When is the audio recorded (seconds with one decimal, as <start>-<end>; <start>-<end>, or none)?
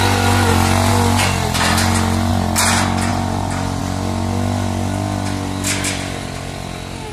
0.0-3.1; 3.8-7.1